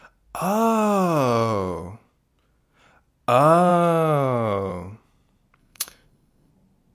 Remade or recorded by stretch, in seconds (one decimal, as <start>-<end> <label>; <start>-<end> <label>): 0.0-5.6 recorded; 5.6-6.5 remade; 6.5-6.9 recorded